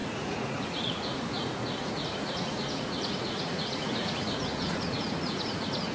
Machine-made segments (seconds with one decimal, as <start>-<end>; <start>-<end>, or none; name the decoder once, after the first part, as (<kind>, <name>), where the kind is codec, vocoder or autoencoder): 0.0-5.9 (vocoder, Vocos)